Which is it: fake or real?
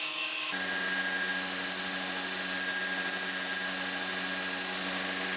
real